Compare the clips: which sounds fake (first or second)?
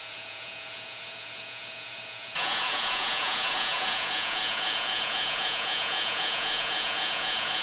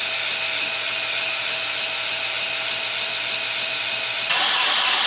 first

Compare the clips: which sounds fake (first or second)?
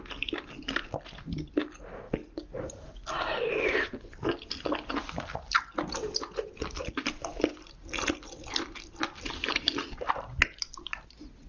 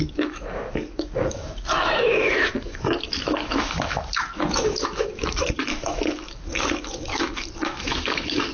second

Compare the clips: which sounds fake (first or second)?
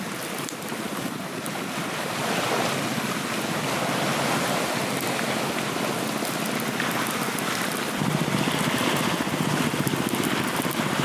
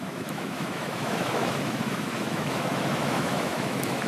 second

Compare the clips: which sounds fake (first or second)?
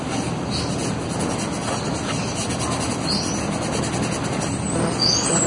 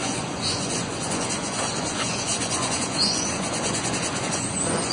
second